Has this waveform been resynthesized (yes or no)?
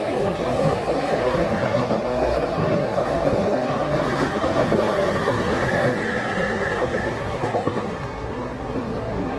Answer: yes